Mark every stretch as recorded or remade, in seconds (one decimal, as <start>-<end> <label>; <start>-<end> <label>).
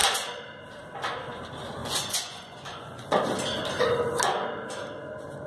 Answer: 0.0-1.8 recorded; 1.8-3.2 remade; 3.2-5.5 recorded